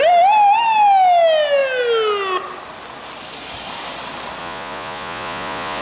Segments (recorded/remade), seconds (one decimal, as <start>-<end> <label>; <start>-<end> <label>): 0.0-4.4 recorded; 4.4-5.8 remade